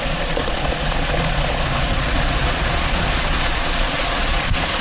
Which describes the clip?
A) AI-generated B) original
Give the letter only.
A